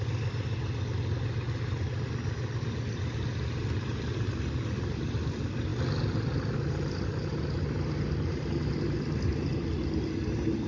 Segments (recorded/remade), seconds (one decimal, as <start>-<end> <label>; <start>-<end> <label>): 0.0-10.7 recorded